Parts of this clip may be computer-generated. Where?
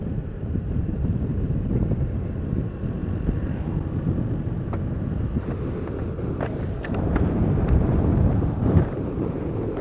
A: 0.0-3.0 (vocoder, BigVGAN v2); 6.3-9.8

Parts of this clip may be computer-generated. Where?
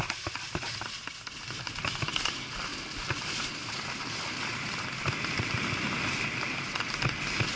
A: none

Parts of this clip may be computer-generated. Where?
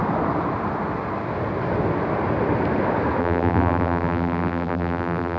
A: 3.2-5.4 (vocoder, BigVGAN v2)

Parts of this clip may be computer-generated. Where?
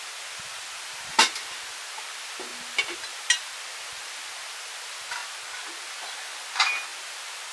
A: none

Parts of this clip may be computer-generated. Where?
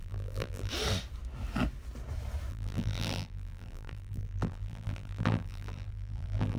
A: 0.0-0.7 (vocoder, BigVGAN v2); 2.5-6.6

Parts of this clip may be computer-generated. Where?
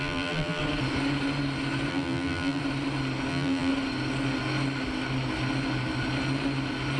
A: 0.0-0.6 (vocoder, BigVGAN v2); 1.9-2.6; 3.3-3.7